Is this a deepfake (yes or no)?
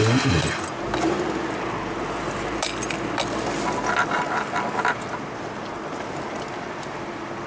no